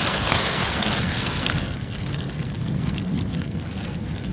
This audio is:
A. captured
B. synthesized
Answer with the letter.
B